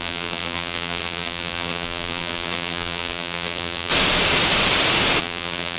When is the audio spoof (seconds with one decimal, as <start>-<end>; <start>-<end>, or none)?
0.0-3.9; 5.2-5.8

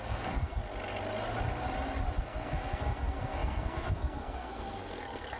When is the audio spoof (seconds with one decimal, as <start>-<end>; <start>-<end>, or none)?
0.0-0.6; 2.2-5.4

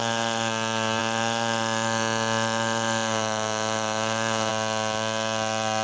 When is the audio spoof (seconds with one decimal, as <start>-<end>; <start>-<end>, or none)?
0.0-0.5; 1.0-4.5

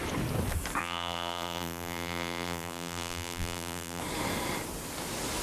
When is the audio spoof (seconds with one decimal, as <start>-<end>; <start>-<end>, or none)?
0.8-4.0